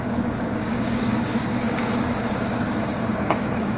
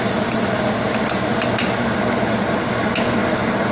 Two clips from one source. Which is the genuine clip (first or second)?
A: second